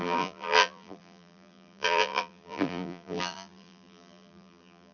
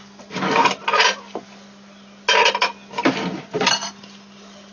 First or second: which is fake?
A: first